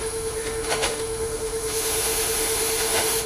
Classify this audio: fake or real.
fake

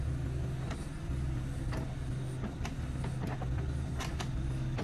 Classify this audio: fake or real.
real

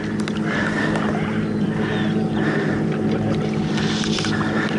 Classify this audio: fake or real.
real